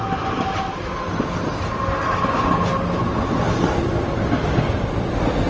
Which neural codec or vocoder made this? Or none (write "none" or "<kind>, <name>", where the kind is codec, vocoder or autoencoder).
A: none